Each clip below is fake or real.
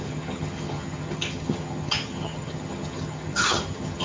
fake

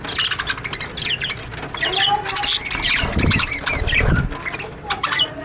real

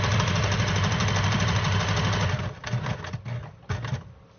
fake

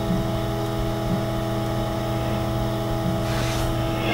real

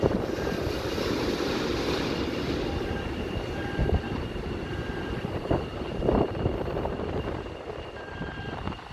fake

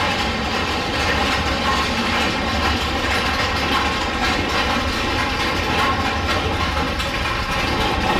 real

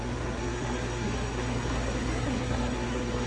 fake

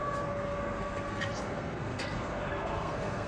fake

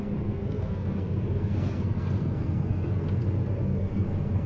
fake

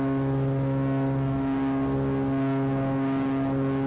real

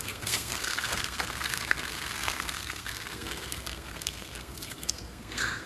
fake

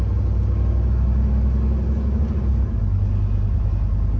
real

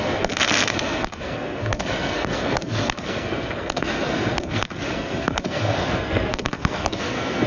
fake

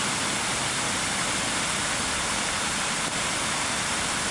real